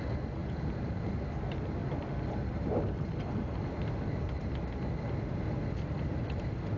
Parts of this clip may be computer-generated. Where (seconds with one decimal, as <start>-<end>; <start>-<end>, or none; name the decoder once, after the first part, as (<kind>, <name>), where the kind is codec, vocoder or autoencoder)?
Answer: 0.4-1.2 (vocoder, BigVGAN v2); 1.8-4.5